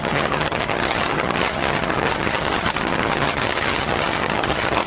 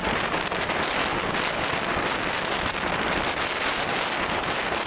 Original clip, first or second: second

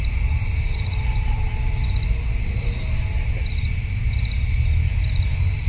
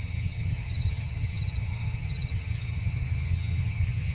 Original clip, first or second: first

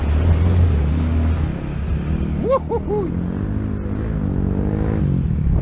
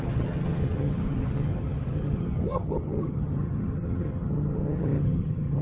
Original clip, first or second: first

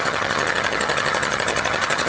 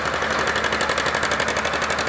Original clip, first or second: second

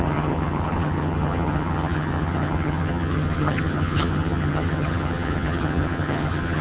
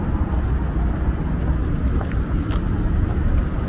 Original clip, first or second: second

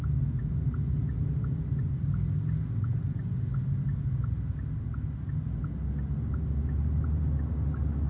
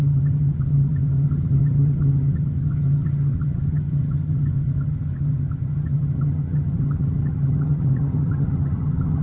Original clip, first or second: first